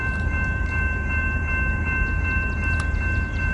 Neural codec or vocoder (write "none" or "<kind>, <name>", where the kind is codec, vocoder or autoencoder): vocoder, BigVGAN v2